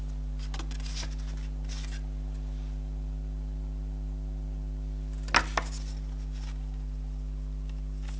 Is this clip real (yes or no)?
yes